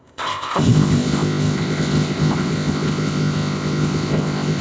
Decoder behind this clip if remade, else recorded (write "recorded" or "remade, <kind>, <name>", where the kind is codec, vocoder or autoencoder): remade, codec, ZipCodec